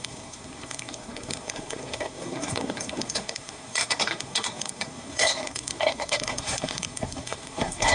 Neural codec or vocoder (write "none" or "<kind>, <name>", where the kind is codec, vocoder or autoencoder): codec, SNAC